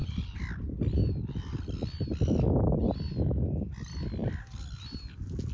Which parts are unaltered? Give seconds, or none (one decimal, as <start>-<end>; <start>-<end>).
0.0-4.2; 4.8-5.5

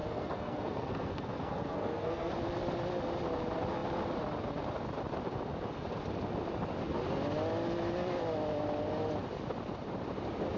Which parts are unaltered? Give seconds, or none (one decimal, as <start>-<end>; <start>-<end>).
2.3-10.6

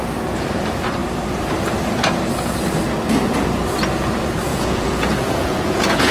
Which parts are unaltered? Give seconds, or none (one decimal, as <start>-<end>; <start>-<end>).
0.0-4.5

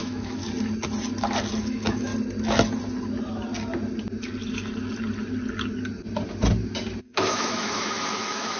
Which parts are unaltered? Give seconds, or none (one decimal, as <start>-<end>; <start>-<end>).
0.4-1.6; 2.1-7.0

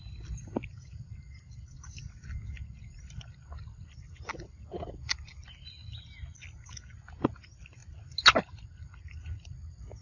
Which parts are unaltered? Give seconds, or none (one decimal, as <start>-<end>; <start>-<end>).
0.0-10.0

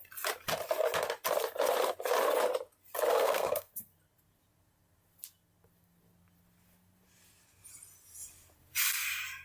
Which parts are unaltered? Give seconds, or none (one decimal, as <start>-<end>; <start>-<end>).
0.0-3.1; 3.7-9.4

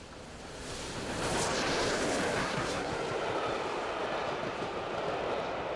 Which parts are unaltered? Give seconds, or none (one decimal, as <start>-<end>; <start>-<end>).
0.0-2.4; 2.9-5.8

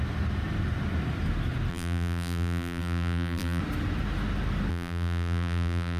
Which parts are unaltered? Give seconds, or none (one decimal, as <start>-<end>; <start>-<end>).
0.0-1.7; 3.6-4.7